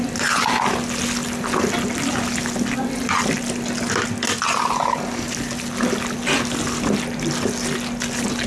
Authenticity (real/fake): real